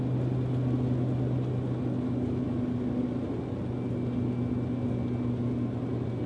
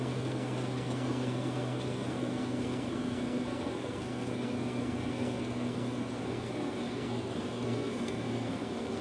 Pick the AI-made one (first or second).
second